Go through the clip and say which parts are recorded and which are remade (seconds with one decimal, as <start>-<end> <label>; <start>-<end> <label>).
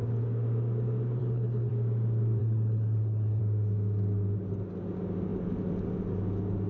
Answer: 0.0-1.2 recorded; 1.2-1.7 remade; 1.7-2.4 recorded; 2.4-3.4 remade; 3.4-6.7 recorded